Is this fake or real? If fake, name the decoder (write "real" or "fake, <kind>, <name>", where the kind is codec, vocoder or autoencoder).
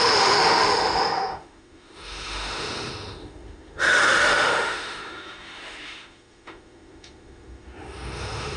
fake, autoencoder, DAC-VAE